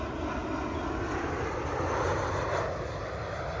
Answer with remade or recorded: recorded